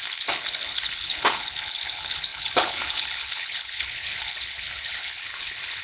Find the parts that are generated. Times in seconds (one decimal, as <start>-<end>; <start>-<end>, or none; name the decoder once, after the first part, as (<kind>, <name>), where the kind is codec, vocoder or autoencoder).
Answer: 0.0-5.8 (codec, HILCodec)